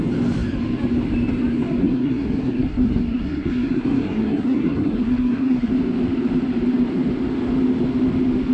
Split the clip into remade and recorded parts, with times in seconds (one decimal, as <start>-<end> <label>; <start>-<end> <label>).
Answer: 0.0-1.8 recorded; 1.8-5.7 remade; 5.7-8.5 recorded